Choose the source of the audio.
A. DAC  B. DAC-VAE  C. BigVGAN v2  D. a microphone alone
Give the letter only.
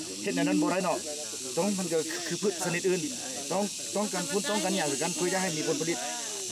D